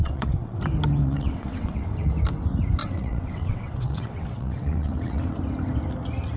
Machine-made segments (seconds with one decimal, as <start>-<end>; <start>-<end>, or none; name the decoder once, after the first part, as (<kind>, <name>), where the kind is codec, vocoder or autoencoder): 0.0-0.6 (vocoder, WaveNeXt); 1.0-2.1; 2.8-5.4